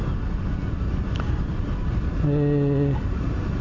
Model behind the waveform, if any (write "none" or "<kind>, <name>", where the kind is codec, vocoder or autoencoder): none